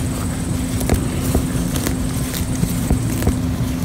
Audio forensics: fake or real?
real